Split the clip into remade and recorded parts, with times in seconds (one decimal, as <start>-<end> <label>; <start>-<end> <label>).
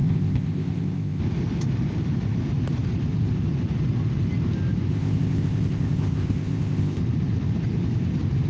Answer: 0.0-1.2 remade; 1.2-4.9 recorded; 4.9-7.0 remade; 7.0-8.5 recorded